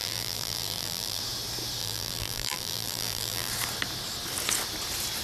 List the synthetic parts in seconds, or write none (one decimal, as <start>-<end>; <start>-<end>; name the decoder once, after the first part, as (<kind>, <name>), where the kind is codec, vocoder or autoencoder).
0.0-1.2 (vocoder, BigVGAN v2); 1.8-3.5